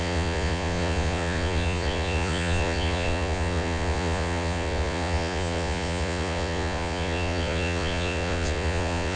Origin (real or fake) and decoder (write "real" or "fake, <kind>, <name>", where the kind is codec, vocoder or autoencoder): fake, vocoder, Vocos